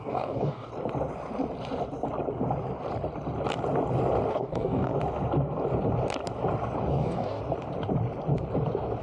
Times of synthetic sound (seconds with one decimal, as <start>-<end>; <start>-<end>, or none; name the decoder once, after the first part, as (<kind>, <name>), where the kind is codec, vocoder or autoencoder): 0.0-0.7 (codec, DAC); 4.3-4.9; 6.9-7.4

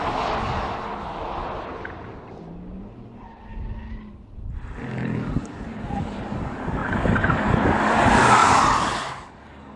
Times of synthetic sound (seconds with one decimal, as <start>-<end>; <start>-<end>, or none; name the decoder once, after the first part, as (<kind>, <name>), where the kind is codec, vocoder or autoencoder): 0.0-0.9 (codec, DAC); 4.8-9.8

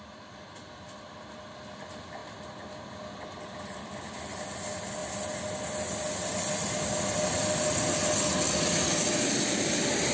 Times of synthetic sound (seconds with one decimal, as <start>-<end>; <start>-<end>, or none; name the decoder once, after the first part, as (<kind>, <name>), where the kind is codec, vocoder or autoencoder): none

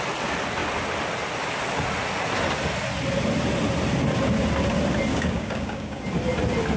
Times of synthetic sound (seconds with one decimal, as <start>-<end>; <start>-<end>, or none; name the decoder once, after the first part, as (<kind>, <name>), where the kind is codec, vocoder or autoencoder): 5.1-6.0 (codec, DAC)

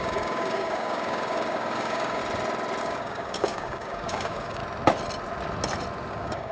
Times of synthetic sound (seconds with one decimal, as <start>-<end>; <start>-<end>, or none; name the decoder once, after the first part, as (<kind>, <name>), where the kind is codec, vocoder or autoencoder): 0.0-2.2 (codec, DAC); 2.8-4.6; 6.1-6.5

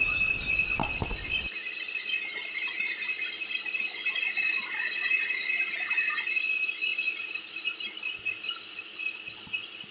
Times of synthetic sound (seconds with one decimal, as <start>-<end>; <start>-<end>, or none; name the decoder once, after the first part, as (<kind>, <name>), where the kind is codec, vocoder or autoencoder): none

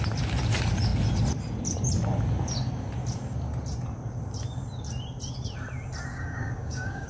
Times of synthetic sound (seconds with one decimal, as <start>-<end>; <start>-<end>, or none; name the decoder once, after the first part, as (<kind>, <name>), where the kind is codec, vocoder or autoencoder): 6.1-7.1 (codec, DAC)